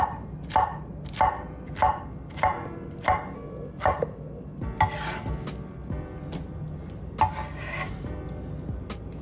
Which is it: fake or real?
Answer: real